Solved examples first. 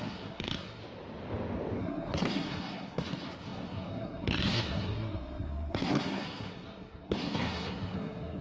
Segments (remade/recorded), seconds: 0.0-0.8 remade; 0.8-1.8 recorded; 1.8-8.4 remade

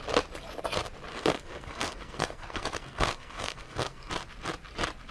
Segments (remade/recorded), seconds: 0.0-1.1 recorded; 1.1-4.1 remade; 4.1-5.1 recorded